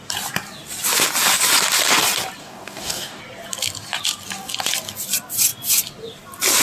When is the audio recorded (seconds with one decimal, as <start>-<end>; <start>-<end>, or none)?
0.0-2.4; 3.2-6.6